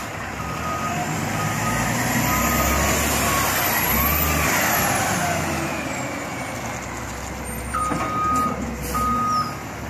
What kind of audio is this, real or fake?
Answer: real